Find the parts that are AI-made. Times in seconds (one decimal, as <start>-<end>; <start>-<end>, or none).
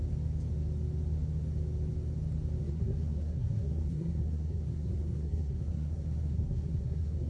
2.6-7.3